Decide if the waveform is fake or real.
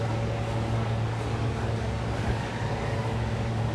fake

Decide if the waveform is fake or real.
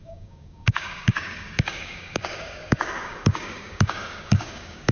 fake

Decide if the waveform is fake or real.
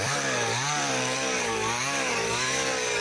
fake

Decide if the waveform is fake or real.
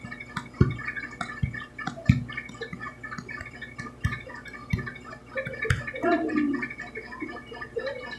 real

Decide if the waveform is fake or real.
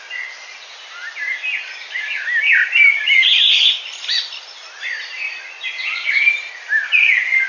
real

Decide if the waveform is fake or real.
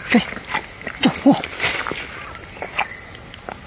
real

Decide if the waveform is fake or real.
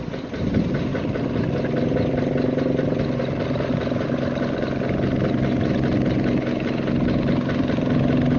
real